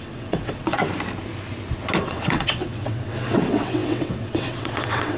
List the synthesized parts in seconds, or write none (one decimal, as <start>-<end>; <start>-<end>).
0.0-0.8; 2.0-5.2